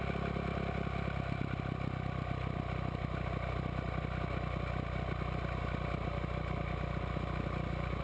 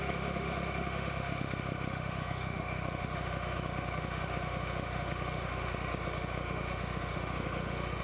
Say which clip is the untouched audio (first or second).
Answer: first